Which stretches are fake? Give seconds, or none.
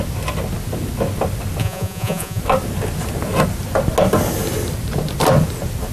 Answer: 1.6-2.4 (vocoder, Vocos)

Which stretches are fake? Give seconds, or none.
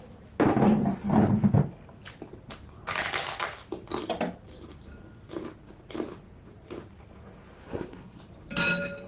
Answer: 7.6-8.2 (codec, SNAC)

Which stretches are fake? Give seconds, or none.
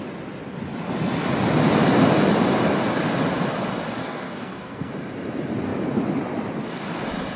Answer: 4.0-4.9 (codec, SNAC)